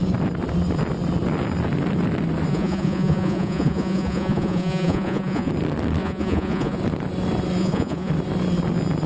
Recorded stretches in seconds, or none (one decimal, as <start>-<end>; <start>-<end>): 0.0-2.5; 5.5-6.0; 6.8-7.6; 8.1-9.1